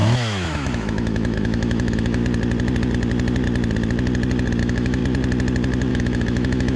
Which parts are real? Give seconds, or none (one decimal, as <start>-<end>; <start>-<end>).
2.2-4.6; 5.0-5.9